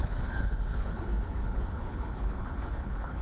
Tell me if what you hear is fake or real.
fake